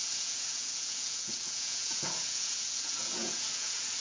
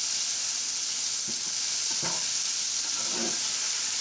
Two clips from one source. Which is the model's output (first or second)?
first